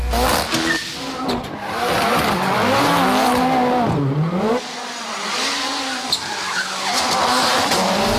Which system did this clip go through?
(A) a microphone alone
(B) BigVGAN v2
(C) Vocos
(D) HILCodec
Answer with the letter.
A